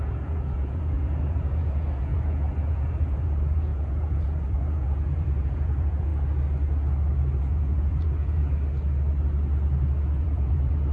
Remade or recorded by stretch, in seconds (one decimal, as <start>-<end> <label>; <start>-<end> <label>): 0.0-6.1 remade; 6.1-7.4 recorded; 7.4-8.4 remade; 8.4-10.2 recorded; 10.2-10.9 remade